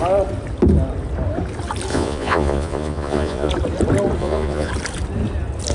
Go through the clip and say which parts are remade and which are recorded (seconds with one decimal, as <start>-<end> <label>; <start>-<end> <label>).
0.0-1.9 recorded; 1.9-3.5 remade; 3.5-4.2 recorded; 4.2-4.7 remade; 4.7-5.7 recorded